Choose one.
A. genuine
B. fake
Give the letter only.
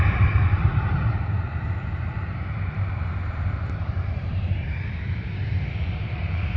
B